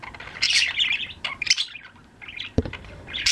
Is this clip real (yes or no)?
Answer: no